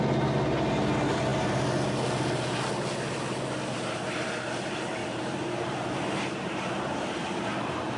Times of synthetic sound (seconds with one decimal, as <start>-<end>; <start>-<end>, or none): 5.0-8.0